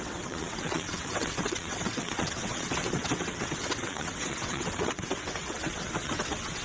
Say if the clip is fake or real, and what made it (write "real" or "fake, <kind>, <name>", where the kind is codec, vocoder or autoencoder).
fake, vocoder, WaveNeXt